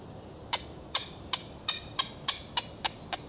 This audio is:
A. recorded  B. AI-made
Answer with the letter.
A